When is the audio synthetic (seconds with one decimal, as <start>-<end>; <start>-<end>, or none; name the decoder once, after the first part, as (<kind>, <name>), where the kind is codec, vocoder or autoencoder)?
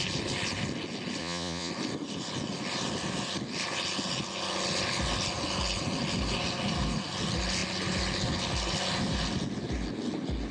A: 1.2-1.7 (vocoder, Vocos)